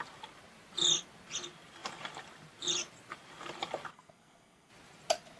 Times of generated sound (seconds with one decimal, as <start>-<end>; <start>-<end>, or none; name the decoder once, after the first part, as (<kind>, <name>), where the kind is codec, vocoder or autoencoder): 3.9-4.7 (codec, SNAC)